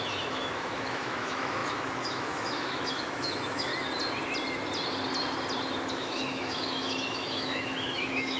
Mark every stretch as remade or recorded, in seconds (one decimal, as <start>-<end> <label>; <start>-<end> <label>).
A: 0.0-3.7 remade; 3.7-5.9 recorded; 5.9-8.4 remade

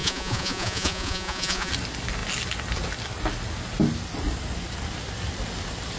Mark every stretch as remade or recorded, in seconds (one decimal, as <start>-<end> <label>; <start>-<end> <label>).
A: 0.0-1.7 remade; 1.7-6.0 recorded

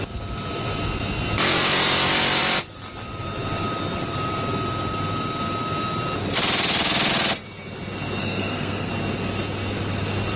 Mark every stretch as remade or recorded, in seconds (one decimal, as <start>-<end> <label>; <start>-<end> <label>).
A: 0.0-8.2 recorded; 8.2-8.9 remade; 8.9-10.4 recorded

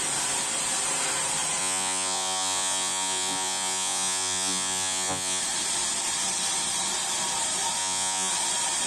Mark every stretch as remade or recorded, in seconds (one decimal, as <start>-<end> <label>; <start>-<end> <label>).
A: 0.0-1.6 recorded; 1.6-5.4 remade; 5.4-7.8 recorded; 7.8-8.3 remade; 8.3-8.9 recorded

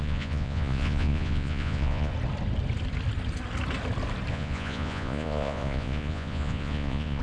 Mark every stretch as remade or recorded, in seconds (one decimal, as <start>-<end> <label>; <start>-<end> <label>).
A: 0.0-2.1 remade; 2.1-4.3 recorded; 4.3-7.2 remade

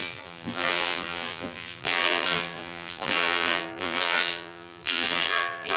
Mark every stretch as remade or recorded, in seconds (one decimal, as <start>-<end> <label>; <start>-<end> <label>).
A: 0.0-5.8 remade

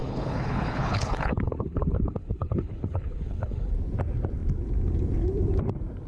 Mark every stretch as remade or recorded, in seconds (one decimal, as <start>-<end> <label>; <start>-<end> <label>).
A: 0.0-3.7 remade; 3.7-6.1 recorded

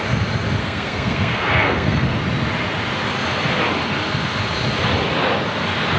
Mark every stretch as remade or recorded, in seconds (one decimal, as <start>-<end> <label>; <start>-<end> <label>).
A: 0.0-0.6 recorded; 0.6-2.2 remade; 2.2-6.0 recorded